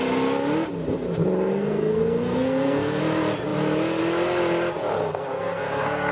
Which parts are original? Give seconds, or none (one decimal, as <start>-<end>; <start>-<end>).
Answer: 0.0-1.5; 3.0-5.0